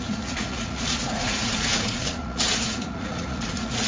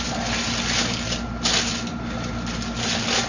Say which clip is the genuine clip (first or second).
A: second